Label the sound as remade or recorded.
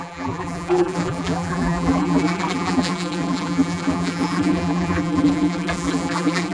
remade